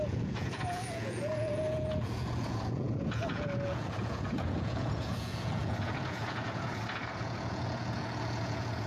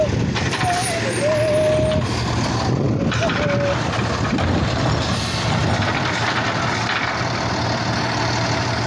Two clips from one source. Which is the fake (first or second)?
first